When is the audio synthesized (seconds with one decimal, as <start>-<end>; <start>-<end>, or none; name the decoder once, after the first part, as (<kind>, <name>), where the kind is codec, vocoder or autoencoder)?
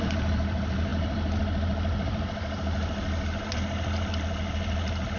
none